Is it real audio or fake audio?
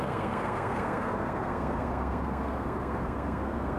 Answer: fake